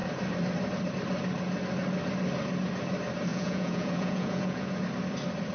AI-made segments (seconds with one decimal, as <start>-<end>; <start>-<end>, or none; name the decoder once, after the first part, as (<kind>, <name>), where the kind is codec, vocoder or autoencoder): 3.3-4.8 (vocoder, Vocos)